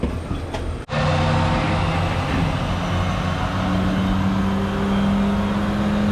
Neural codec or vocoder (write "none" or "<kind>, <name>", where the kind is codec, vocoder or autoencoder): none